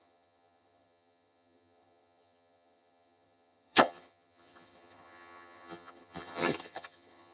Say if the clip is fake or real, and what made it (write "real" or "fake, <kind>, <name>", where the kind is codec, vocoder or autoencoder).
fake, vocoder, HiFi-GAN